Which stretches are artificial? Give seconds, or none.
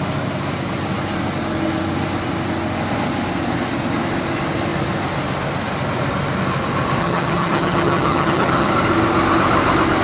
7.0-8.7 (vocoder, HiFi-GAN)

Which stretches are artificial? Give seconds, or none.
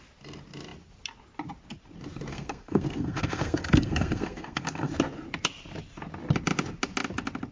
2.3-4.9 (codec, SNAC)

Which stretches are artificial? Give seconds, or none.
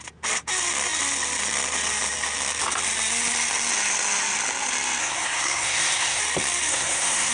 5.0-6.2 (codec, SNAC); 6.7-7.3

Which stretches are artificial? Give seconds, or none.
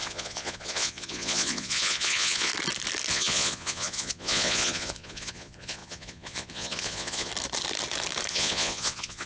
0.0-2.5 (vocoder, Vocos); 3.1-7.3; 8.3-9.3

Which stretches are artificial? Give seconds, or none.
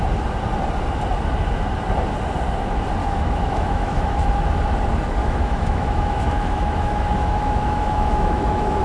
3.0-4.3 (autoencoder, DAC-VAE); 5.2-8.8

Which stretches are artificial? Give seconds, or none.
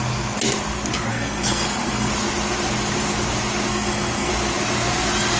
1.1-2.1 (codec, SNAC); 3.7-4.3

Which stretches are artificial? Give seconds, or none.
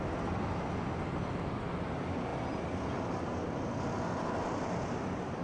4.4-5.4 (vocoder, BigVGAN v2)